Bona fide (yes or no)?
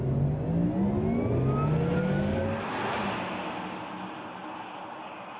yes